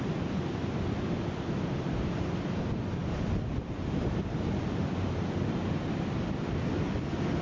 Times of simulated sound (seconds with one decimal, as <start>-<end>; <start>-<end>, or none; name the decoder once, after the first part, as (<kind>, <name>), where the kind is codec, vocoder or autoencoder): none